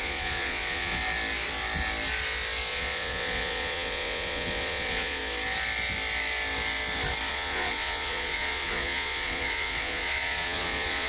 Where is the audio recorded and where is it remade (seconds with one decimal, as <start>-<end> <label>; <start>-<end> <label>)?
0.0-1.0 remade; 1.0-2.7 recorded; 2.7-5.2 remade; 5.2-7.3 recorded; 7.3-11.1 remade